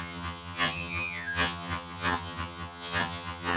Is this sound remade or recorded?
remade